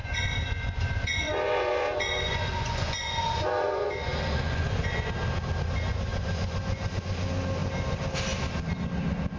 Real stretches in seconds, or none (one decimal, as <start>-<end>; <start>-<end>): 5.1-6.1; 6.9-9.4